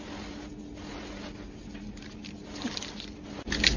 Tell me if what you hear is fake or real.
real